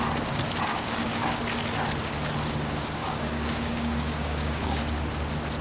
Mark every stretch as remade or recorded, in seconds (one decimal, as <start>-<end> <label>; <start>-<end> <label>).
0.0-0.7 recorded; 0.7-1.4 remade; 1.4-3.0 recorded; 3.0-4.8 remade; 4.8-5.6 recorded